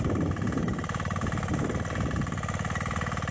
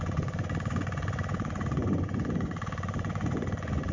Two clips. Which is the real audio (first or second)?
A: first